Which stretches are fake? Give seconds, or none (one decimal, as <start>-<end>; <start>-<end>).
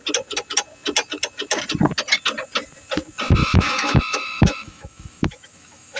3.4-6.0